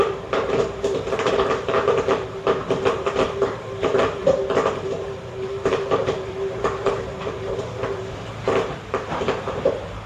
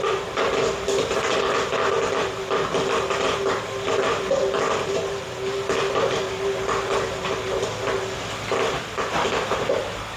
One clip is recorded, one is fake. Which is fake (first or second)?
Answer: first